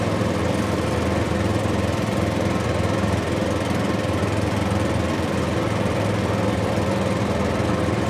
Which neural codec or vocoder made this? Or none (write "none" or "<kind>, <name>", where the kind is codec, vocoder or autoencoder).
none